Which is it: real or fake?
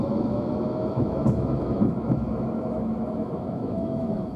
fake